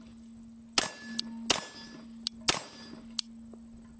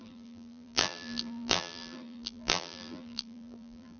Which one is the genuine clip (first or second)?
first